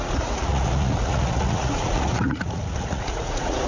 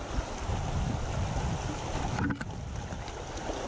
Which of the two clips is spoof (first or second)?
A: first